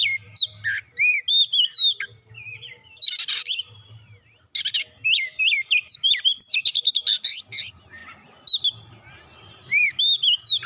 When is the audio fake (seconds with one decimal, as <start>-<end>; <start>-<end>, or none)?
3.4-4.5